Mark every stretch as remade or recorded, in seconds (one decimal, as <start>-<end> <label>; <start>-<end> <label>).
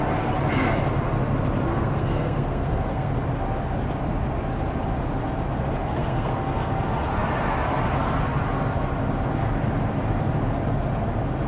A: 0.0-1.7 recorded; 1.7-3.1 remade; 3.1-5.8 recorded; 5.8-6.7 remade; 6.7-11.5 recorded